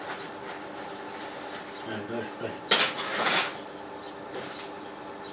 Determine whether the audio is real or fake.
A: real